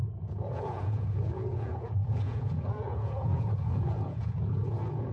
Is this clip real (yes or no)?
no